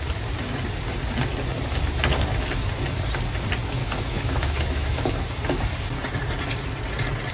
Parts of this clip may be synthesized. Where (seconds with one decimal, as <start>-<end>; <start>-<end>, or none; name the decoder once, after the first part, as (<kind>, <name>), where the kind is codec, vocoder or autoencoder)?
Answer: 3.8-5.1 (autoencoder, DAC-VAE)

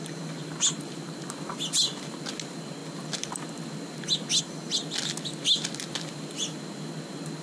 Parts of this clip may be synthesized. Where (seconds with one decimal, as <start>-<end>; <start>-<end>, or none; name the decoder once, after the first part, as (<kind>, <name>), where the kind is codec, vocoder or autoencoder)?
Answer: none

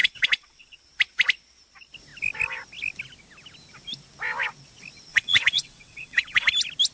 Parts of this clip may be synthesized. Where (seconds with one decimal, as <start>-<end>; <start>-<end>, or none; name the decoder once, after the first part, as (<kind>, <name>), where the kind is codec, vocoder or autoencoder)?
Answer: 0.0-0.8 (vocoder, WaveNeXt); 5.1-6.5